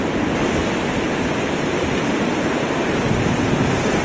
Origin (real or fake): real